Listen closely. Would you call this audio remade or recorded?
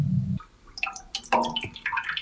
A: recorded